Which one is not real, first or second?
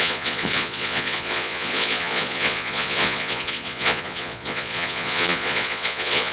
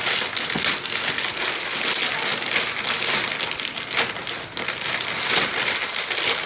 first